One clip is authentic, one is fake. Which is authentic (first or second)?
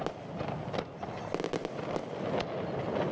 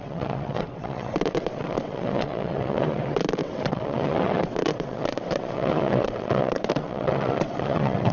first